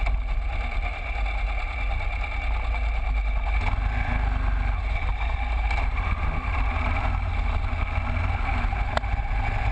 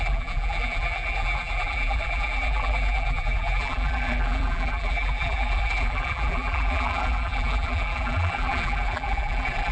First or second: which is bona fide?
first